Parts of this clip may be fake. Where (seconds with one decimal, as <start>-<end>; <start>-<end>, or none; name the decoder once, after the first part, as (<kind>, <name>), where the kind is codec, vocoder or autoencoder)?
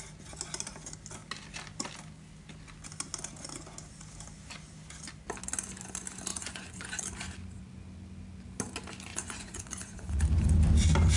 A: 6.3-7.0 (vocoder, Vocos); 9.1-10.2